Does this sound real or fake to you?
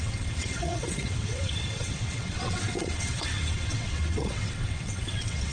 fake